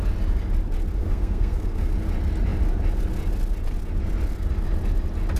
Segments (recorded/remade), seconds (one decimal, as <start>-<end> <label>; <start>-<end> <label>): 0.0-1.0 recorded; 1.0-2.0 remade; 2.0-5.4 recorded